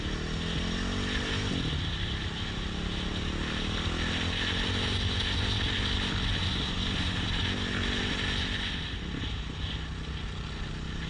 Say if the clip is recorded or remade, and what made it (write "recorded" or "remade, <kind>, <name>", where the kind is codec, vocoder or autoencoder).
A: recorded